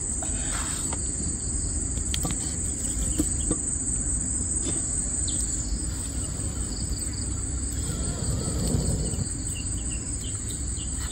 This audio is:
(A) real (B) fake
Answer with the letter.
A